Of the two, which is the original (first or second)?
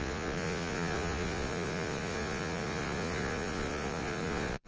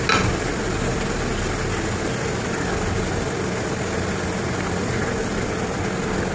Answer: second